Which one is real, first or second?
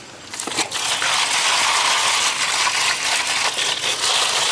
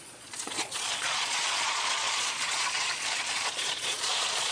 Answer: first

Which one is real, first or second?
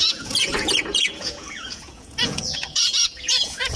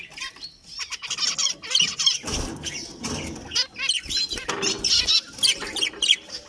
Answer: second